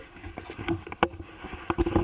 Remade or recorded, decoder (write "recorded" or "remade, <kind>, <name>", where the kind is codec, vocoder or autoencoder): recorded